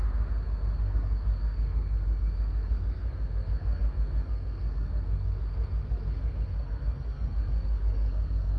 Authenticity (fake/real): fake